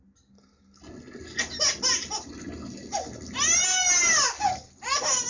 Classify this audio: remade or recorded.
recorded